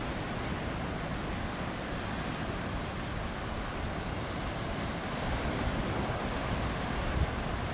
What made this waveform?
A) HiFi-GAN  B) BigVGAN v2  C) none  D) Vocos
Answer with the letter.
C